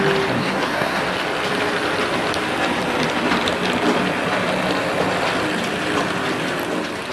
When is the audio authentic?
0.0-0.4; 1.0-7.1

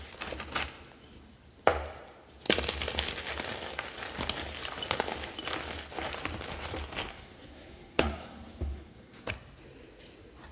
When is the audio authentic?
0.0-7.1; 9.3-10.5